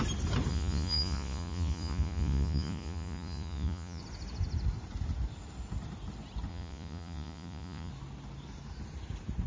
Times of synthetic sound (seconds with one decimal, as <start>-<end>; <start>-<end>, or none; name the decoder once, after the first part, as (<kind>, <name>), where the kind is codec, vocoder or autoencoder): 0.5-4.0 (vocoder, Vocos); 6.5-7.9